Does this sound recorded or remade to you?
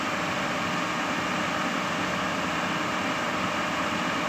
recorded